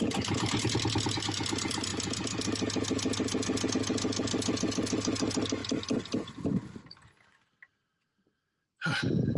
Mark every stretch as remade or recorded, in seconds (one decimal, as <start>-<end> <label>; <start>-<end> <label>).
0.0-5.6 recorded; 5.6-7.1 remade; 7.1-9.4 recorded